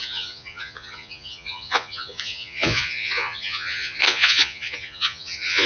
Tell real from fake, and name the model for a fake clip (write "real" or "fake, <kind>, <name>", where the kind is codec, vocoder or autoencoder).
fake, vocoder, Vocos